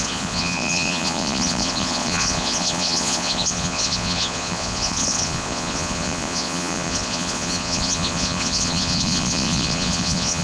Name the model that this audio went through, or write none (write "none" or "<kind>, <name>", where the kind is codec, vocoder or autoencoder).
vocoder, Vocos